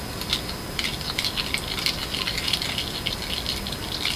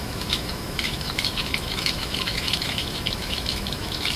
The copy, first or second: second